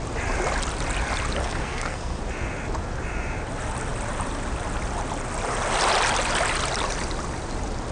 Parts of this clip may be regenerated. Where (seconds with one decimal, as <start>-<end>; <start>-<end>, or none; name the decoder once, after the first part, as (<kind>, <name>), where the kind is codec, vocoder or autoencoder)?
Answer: 1.4-2.2 (codec, SNAC)